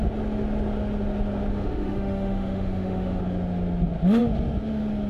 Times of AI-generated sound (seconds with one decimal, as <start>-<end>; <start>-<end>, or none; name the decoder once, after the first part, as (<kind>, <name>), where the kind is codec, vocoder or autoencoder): 1.5-3.2 (autoencoder, DAC-VAE)